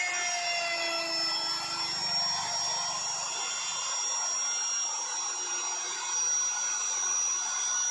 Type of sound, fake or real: real